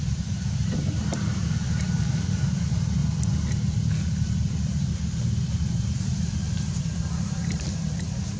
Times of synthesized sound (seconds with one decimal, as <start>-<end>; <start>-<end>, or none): 0.0-3.0; 5.7-8.4